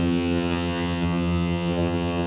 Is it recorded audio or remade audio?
remade